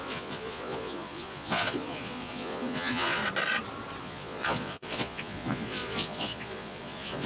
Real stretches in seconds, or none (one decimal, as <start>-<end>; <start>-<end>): 3.2-4.0